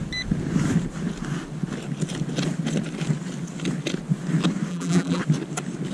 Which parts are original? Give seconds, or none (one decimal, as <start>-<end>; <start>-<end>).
0.0-4.7; 5.2-5.9